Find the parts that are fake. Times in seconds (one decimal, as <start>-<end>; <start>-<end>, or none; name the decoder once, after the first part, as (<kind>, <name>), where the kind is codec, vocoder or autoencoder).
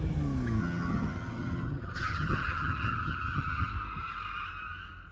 0.6-3.7 (vocoder, HiFi-GAN)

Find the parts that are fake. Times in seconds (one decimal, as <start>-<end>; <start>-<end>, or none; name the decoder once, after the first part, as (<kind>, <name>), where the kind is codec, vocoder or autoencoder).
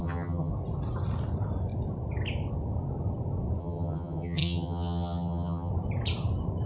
0.0-0.5 (vocoder, HiFi-GAN); 3.6-5.7